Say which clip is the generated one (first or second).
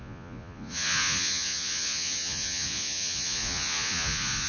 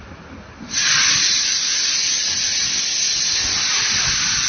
first